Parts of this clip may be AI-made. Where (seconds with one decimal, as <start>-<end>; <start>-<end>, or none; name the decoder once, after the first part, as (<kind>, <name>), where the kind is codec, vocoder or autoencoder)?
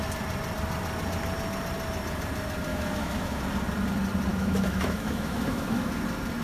2.7-3.4 (autoencoder, DAC-VAE); 4.3-5.9